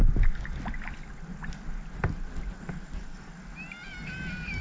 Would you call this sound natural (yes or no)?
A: yes